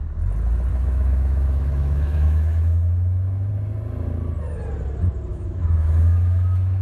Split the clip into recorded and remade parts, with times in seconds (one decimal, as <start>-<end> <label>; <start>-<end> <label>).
0.0-0.7 recorded; 0.7-3.5 remade; 3.5-5.3 recorded; 5.3-6.8 remade